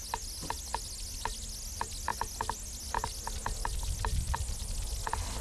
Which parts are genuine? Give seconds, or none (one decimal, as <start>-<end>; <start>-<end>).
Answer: 0.0-5.4